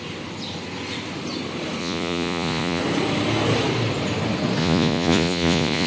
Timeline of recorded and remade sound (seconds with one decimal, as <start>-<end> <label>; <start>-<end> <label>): 0.0-1.8 recorded; 1.8-2.8 remade; 2.8-4.6 recorded; 4.6-5.9 remade